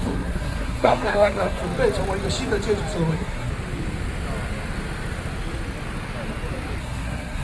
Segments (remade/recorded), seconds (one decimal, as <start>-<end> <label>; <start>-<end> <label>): 0.0-1.6 remade; 1.6-3.1 recorded; 3.1-3.5 remade; 3.5-6.8 recorded; 6.8-7.4 remade